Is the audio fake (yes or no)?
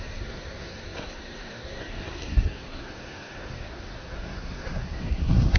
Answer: yes